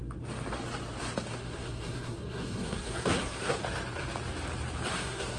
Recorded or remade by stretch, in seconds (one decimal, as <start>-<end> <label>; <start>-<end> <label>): 0.0-1.3 recorded; 1.3-3.6 remade; 3.6-4.9 recorded; 4.9-5.4 remade

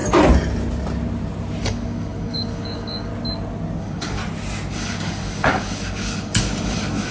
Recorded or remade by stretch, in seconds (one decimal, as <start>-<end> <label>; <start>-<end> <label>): 0.0-1.6 recorded; 1.6-3.1 remade; 3.1-3.8 recorded; 3.8-4.2 remade; 4.2-4.7 recorded; 4.7-7.1 remade

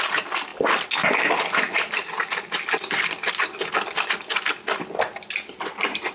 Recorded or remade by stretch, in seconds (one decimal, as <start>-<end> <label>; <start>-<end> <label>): 0.0-6.1 recorded

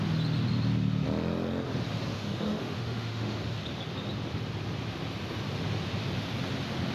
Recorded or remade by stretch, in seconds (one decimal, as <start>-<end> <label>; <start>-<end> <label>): 0.0-2.1 recorded; 2.1-3.4 remade; 3.4-6.9 recorded

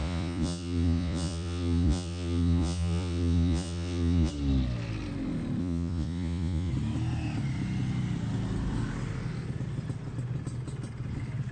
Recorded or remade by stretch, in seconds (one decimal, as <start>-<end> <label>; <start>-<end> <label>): 0.0-4.3 remade; 4.3-5.6 recorded; 5.6-6.7 remade; 6.7-11.5 recorded

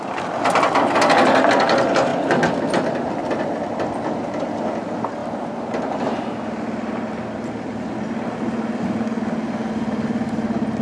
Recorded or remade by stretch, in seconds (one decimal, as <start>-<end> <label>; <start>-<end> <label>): 0.0-5.2 recorded; 5.2-6.0 remade; 6.0-10.8 recorded

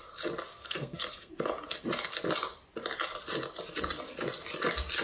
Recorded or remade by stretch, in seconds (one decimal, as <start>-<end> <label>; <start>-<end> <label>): 0.0-0.5 recorded; 0.5-1.3 remade; 1.3-5.0 recorded

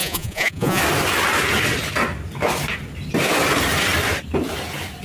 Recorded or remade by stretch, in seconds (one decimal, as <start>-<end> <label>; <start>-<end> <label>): 0.0-0.8 remade; 0.8-5.0 recorded